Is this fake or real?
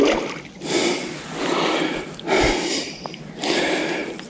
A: fake